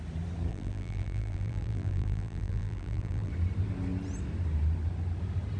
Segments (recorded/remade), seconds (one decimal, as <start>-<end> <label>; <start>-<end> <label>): 0.0-0.5 recorded; 0.5-3.3 remade; 3.3-5.6 recorded